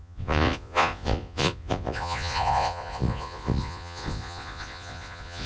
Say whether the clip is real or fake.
fake